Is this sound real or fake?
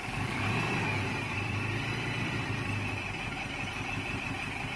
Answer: fake